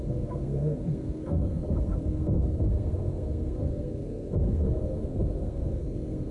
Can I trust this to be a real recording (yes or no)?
no